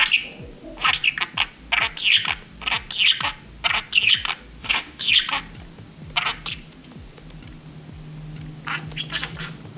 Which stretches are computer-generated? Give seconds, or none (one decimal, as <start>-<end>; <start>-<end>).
4.6-5.1